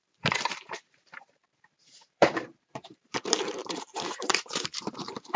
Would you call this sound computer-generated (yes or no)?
yes